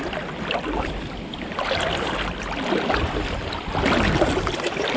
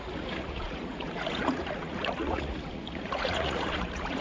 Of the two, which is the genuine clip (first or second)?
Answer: first